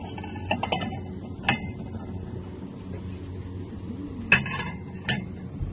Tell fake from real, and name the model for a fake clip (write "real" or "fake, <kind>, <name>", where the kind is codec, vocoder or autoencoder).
real